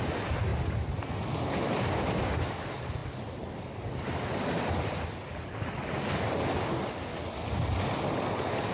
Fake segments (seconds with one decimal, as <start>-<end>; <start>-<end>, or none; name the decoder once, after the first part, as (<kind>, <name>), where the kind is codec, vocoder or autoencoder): none